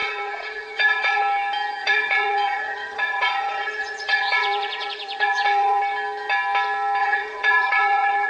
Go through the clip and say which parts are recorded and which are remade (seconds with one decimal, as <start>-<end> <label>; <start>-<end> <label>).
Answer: 0.0-1.2 remade; 1.2-1.8 recorded; 1.8-5.8 remade; 5.8-7.0 recorded; 7.0-8.3 remade